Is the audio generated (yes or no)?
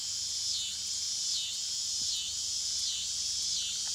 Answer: no